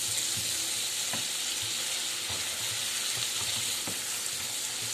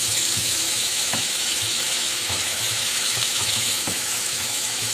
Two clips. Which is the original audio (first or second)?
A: first